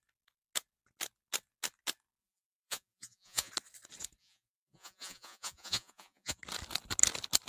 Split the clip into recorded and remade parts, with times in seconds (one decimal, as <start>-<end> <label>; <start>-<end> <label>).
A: 0.0-2.2 recorded; 2.2-3.5 remade; 3.5-4.2 recorded; 4.2-6.4 remade; 6.4-7.5 recorded

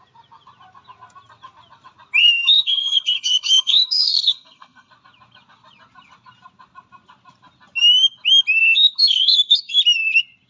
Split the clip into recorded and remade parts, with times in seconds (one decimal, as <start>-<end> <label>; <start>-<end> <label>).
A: 0.0-2.2 recorded; 2.2-4.9 remade; 4.9-8.6 recorded; 8.6-9.8 remade; 9.8-10.5 recorded

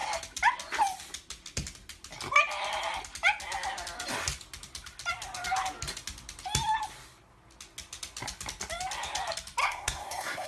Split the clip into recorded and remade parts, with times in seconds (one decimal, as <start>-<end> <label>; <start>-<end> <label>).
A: 0.0-9.6 recorded; 9.6-10.5 remade

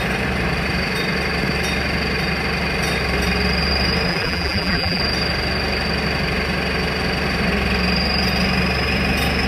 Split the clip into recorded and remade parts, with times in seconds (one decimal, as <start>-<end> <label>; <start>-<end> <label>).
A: 0.0-4.1 recorded; 4.1-5.0 remade; 5.0-9.5 recorded

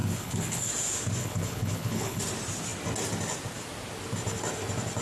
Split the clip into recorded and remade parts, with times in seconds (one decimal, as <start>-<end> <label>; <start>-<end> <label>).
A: 0.0-0.7 remade; 0.7-1.2 recorded; 1.2-2.2 remade; 2.2-5.0 recorded

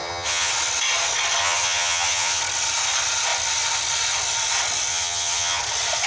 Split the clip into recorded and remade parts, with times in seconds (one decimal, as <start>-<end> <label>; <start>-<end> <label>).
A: 0.0-0.5 remade; 0.5-1.4 recorded; 1.4-2.4 remade; 2.4-4.9 recorded; 4.9-5.6 remade; 5.6-6.1 recorded